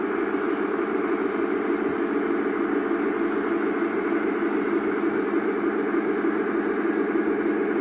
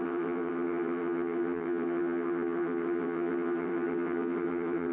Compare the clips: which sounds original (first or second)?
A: first